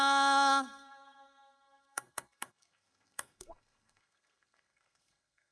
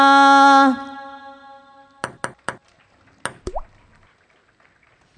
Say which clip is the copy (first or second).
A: first